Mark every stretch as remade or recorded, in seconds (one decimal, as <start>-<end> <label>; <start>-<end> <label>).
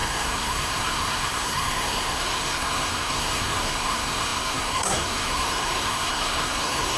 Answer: 0.0-7.0 remade